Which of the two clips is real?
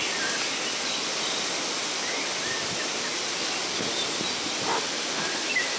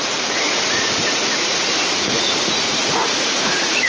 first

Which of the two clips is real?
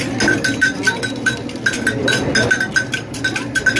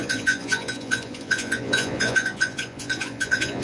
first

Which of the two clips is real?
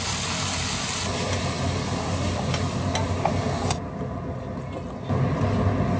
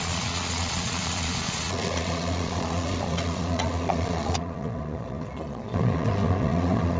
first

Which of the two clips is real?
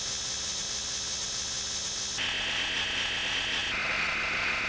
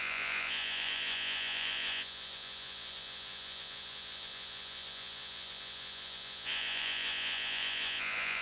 first